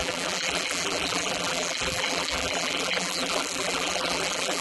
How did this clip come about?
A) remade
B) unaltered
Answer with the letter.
A